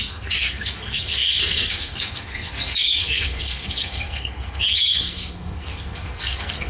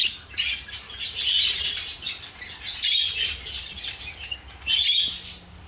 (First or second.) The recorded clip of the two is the second